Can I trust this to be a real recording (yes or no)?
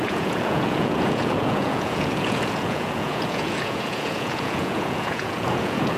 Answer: no